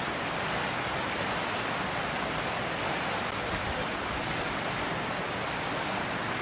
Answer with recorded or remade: recorded